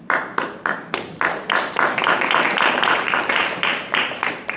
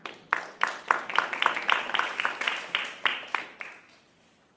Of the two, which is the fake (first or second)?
first